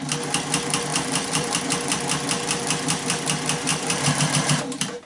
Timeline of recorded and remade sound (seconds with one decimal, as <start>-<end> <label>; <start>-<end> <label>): 0.0-0.9 recorded; 0.9-1.6 remade; 1.6-3.7 recorded; 3.7-5.1 remade